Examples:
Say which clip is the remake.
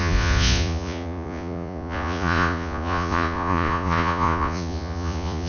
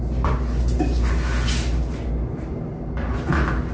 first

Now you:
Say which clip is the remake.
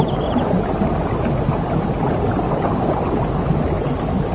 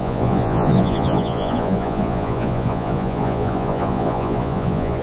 second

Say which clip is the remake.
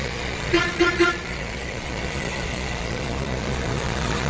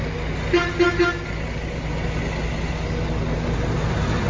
first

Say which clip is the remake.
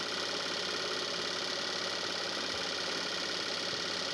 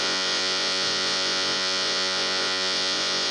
second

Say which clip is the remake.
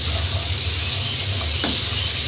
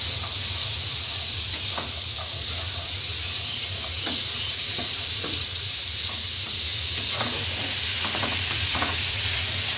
second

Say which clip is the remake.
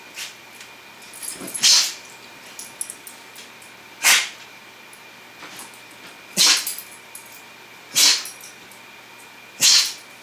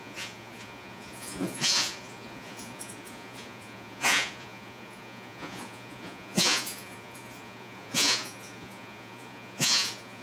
second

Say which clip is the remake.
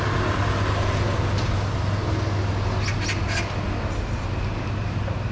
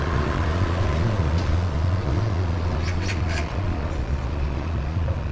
second